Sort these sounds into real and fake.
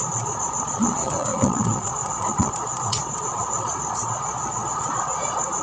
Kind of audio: fake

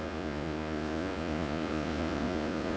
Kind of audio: fake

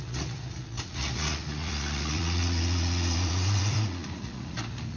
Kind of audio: fake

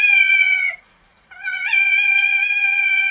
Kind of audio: fake